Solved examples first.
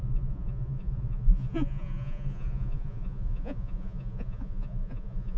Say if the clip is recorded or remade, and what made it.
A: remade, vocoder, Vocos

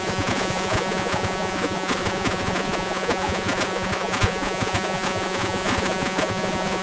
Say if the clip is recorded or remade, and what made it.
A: remade, vocoder, Vocos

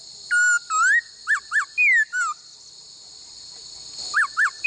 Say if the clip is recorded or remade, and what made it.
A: recorded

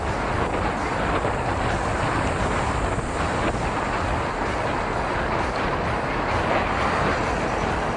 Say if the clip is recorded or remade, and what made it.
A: recorded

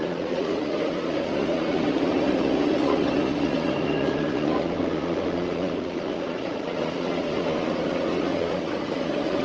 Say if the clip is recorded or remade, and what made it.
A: remade, vocoder, Vocos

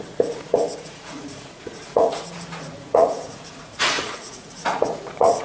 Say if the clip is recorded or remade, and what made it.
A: remade, vocoder, Vocos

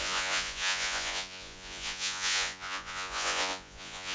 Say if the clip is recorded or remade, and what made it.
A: remade, vocoder, Vocos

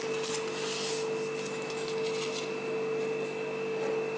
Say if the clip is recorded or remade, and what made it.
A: recorded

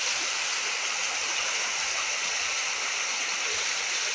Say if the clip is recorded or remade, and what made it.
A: recorded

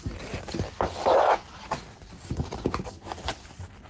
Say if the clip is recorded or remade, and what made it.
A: recorded